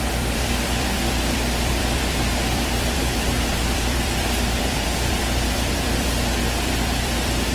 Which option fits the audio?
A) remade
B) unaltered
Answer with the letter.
A